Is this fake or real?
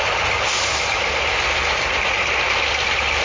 real